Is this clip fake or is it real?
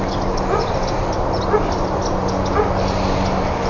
real